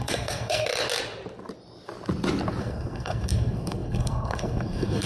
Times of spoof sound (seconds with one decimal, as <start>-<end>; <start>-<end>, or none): 0.0-0.7; 2.6-5.1